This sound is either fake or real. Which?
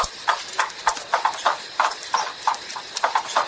real